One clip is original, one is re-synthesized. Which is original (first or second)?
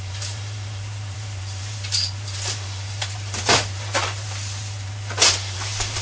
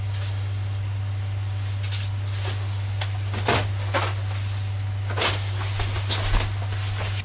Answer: second